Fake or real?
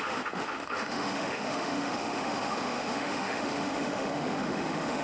fake